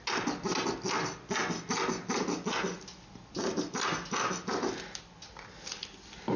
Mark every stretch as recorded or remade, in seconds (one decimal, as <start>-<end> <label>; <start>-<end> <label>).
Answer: 0.0-6.4 recorded